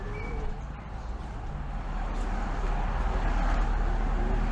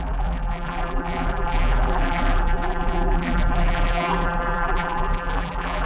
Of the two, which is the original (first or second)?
first